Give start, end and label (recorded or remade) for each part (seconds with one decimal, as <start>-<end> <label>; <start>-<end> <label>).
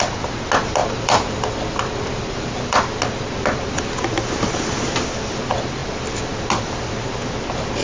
0.0-0.8 recorded; 0.8-3.0 remade; 3.0-7.8 recorded